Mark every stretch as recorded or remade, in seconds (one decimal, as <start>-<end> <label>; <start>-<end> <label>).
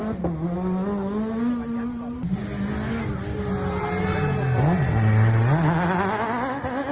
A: 0.0-6.9 recorded